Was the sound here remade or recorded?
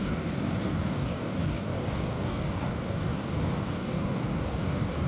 remade